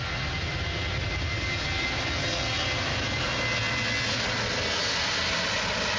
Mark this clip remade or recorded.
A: recorded